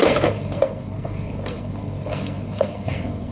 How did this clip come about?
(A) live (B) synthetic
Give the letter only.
B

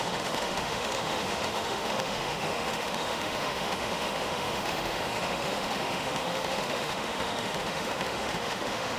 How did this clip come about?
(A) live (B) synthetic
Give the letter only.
B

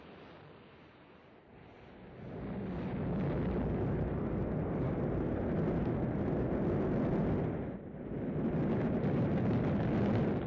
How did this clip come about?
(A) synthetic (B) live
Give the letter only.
B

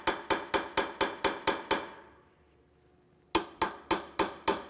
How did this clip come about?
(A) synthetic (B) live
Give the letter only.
B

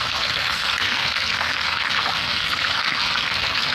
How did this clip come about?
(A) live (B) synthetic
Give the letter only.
B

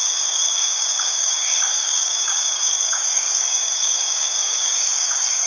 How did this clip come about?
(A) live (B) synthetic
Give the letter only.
B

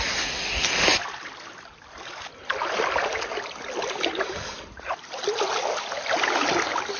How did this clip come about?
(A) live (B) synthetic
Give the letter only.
A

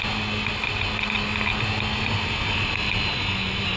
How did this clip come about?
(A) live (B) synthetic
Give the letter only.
A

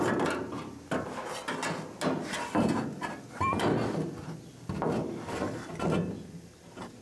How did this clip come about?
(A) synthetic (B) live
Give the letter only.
B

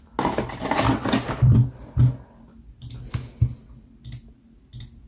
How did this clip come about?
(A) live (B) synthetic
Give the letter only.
A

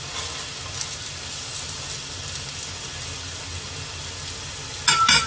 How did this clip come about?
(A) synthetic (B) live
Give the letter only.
B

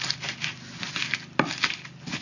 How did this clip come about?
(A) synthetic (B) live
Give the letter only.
B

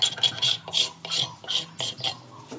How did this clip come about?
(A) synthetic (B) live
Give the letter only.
B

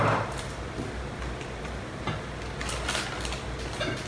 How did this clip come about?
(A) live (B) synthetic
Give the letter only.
A